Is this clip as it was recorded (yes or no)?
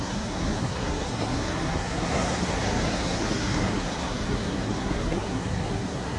no